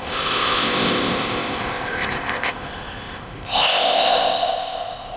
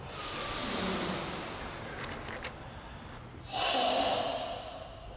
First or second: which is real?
second